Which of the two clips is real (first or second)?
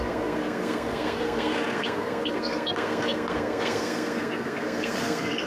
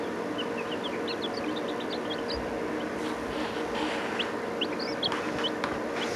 second